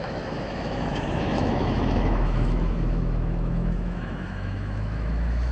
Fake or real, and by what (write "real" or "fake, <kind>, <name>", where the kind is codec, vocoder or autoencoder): fake, autoencoder, DAC-VAE